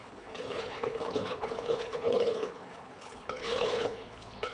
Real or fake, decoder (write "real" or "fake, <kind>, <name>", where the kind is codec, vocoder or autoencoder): fake, codec, HILCodec